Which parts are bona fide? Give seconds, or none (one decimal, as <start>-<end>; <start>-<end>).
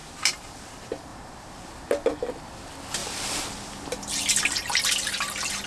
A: 0.7-1.1; 1.8-3.0; 3.7-5.7